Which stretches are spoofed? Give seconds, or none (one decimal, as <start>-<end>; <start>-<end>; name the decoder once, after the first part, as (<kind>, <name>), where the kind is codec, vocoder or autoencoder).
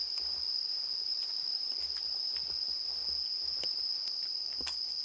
0.0-3.0 (vocoder, BigVGAN v2); 4.1-5.0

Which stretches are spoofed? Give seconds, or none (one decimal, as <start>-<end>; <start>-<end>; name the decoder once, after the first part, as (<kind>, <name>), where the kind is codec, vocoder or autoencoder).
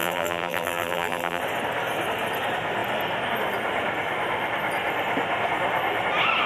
0.0-1.4 (vocoder, BigVGAN v2)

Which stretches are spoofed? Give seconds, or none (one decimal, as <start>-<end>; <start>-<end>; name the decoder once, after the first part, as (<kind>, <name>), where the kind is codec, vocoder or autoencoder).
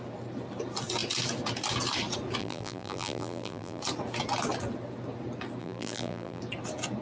2.4-3.8 (vocoder, BigVGAN v2); 5.6-6.4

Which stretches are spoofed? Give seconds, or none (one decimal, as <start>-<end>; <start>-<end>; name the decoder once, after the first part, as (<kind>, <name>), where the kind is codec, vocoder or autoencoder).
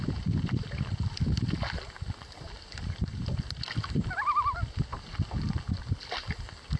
none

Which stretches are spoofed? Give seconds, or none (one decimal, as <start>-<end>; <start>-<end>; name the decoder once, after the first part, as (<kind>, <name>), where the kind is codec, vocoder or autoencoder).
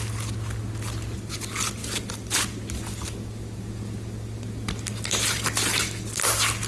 none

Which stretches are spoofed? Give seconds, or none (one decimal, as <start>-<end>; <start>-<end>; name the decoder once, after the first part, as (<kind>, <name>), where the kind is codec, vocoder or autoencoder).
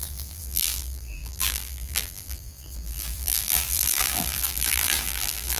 0.0-5.6 (vocoder, BigVGAN v2)